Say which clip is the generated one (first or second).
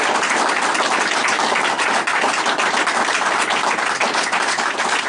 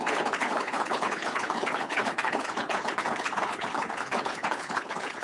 second